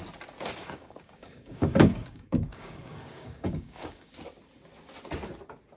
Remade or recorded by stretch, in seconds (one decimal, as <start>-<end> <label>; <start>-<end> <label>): 0.0-0.6 recorded; 0.6-4.1 remade; 4.1-5.8 recorded